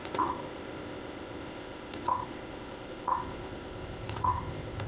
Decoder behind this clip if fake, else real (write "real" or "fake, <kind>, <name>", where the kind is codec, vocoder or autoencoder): fake, codec, ZipCodec